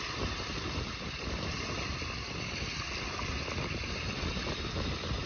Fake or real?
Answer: real